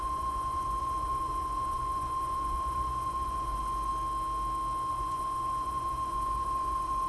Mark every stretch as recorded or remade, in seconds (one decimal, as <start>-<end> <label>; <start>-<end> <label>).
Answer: 0.0-3.9 remade; 3.9-4.9 recorded; 4.9-7.1 remade